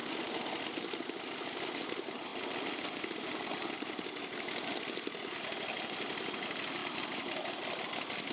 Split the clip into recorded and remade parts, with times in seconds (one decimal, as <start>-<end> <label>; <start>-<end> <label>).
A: 0.0-0.6 remade; 0.6-6.8 recorded; 6.8-7.8 remade; 7.8-8.3 recorded